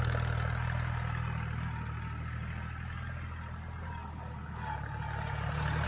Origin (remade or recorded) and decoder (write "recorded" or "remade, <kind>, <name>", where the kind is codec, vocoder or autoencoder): recorded